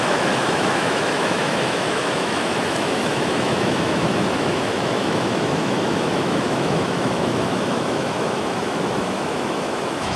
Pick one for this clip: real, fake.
fake